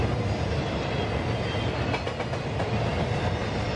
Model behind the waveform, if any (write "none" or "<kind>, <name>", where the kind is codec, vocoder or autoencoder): none